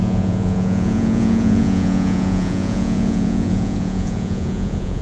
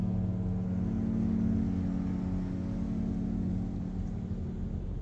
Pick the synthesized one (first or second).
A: first